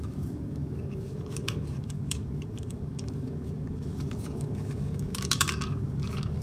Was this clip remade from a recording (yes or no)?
yes